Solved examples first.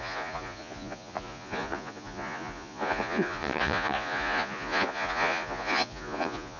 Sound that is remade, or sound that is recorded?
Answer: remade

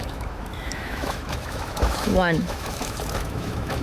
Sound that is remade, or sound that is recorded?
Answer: remade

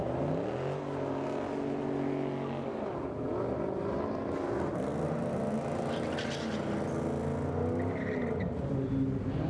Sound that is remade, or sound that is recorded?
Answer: recorded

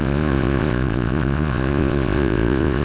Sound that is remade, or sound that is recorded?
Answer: remade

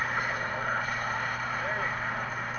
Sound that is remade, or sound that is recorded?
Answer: remade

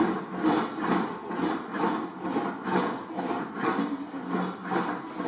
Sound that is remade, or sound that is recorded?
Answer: recorded